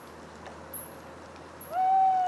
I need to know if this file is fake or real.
real